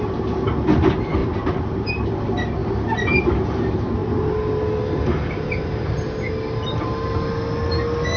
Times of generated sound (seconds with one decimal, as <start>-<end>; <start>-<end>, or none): 1.2-1.9

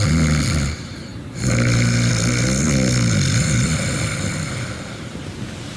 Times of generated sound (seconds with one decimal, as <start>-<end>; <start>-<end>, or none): none